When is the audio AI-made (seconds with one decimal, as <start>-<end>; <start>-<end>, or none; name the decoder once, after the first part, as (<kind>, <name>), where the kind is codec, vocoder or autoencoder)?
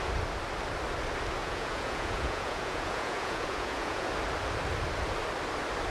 1.4-4.1 (vocoder, Vocos)